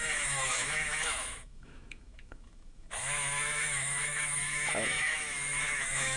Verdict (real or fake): fake